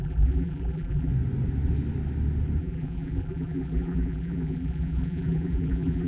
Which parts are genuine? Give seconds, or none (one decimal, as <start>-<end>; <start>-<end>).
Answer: 1.1-2.6